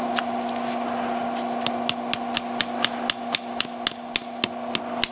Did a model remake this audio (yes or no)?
no